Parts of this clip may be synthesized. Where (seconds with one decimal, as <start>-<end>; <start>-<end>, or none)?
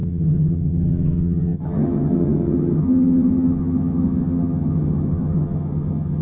0.0-6.2